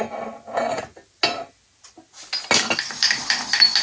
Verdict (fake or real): real